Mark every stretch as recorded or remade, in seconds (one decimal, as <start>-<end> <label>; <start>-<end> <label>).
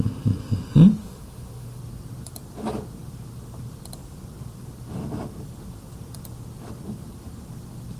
0.0-1.0 recorded; 1.0-1.8 remade; 1.8-8.0 recorded